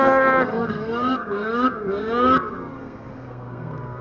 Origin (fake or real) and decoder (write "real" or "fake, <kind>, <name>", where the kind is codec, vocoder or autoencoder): fake, codec, SNAC